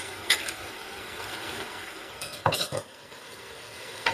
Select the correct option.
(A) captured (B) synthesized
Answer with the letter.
B